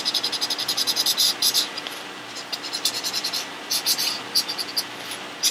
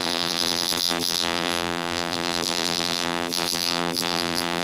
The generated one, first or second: second